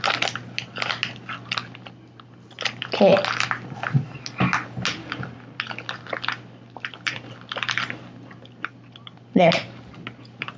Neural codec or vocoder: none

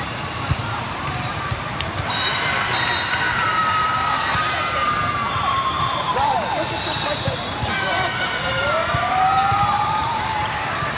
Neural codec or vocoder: vocoder, BigVGAN v2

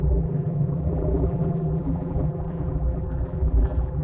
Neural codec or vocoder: vocoder, BigVGAN v2